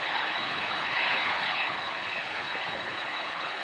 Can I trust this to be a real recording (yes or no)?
no